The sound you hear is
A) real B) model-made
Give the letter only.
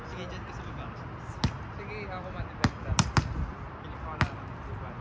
A